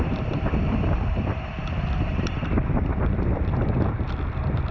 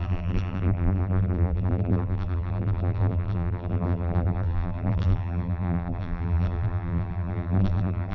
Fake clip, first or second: second